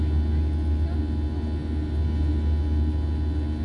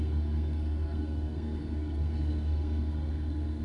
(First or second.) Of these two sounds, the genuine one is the first